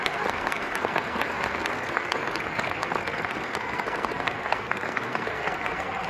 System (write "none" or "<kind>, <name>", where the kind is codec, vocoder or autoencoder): codec, SNAC